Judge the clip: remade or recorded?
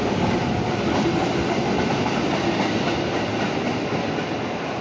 recorded